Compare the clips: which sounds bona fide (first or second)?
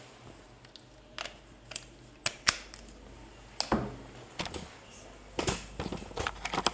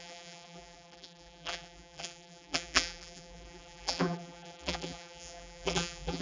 first